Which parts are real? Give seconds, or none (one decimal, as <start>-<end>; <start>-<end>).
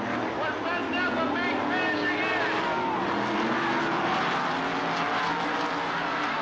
0.0-6.4